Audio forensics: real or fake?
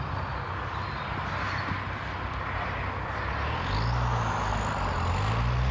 real